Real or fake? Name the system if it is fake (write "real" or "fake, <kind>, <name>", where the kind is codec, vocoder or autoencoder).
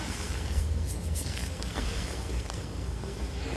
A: fake, codec, SNAC